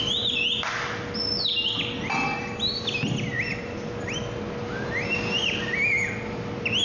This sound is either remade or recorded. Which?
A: recorded